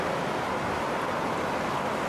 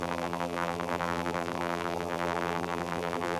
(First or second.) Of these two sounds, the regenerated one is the second